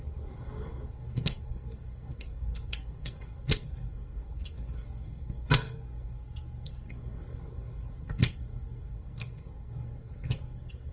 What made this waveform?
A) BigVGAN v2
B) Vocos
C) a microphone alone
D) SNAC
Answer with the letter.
D